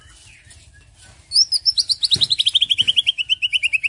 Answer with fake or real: real